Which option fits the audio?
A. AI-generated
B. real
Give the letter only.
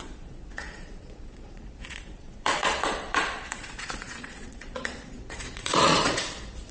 A